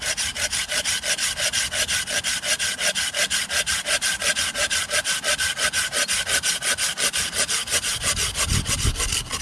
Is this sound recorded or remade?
recorded